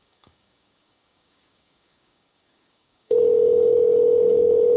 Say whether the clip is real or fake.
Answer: fake